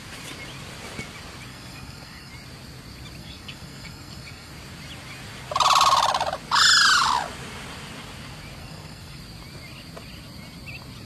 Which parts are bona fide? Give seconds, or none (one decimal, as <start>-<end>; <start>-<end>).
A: 0.0-1.5; 2.3-3.2; 4.5-8.6; 9.2-11.1